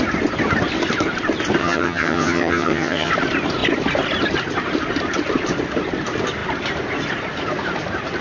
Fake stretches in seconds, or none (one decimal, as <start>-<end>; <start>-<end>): 1.6-3.1